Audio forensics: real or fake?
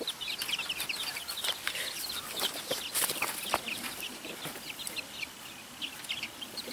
real